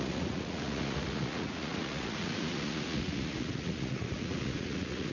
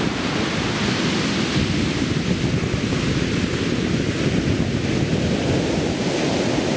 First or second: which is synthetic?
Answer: first